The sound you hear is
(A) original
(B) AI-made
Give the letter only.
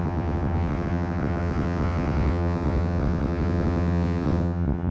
B